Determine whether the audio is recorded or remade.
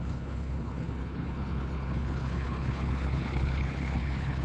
remade